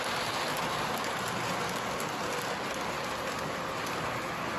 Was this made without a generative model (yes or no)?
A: yes